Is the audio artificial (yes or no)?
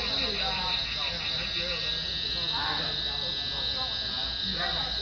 no